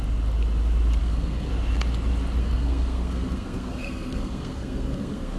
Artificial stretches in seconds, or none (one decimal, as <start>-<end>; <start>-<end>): 1.0-1.5; 2.4-5.4